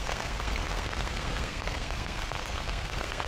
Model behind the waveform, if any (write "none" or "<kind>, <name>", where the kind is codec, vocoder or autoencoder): codec, SNAC